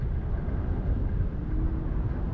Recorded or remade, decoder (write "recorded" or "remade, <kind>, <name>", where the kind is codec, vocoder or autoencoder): recorded